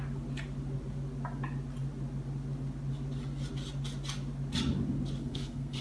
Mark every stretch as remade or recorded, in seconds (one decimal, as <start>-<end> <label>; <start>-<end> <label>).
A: 0.0-5.2 recorded; 5.2-5.8 remade